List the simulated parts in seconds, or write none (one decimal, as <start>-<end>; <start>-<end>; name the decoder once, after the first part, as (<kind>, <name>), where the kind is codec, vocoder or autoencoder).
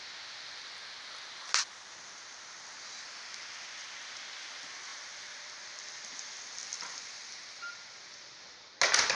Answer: none